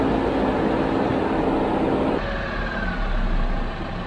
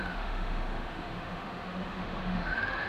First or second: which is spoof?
second